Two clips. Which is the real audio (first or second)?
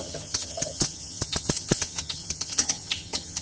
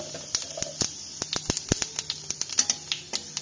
second